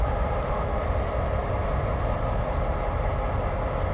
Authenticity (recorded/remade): recorded